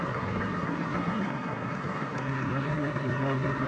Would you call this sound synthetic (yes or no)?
yes